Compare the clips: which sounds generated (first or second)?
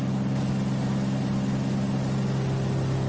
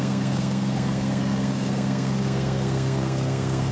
second